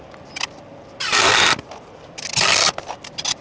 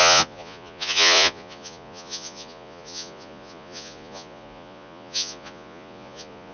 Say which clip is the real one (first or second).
first